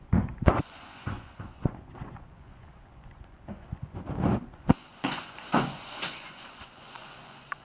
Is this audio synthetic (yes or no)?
yes